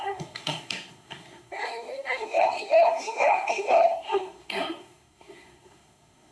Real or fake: fake